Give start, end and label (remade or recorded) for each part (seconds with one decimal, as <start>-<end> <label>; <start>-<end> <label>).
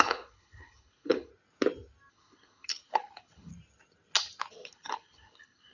0.0-1.3 remade; 1.3-2.1 recorded; 2.1-3.5 remade; 3.5-4.5 recorded; 4.5-5.7 remade